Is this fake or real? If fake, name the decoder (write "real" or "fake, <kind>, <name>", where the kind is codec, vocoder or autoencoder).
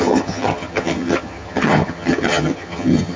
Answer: fake, vocoder, HiFi-GAN